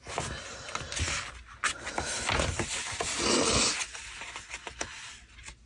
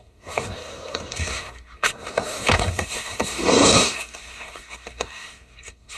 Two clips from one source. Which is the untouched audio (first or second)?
first